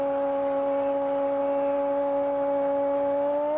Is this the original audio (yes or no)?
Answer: yes